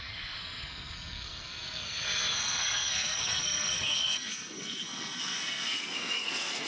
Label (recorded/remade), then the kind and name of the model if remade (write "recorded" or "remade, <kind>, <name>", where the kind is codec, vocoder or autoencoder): remade, codec, SNAC